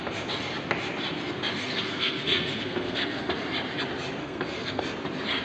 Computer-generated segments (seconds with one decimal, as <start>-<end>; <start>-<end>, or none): 1.5-3.3; 4.2-4.8